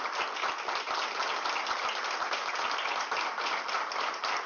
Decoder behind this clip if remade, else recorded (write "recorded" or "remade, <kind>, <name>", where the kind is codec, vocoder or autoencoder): recorded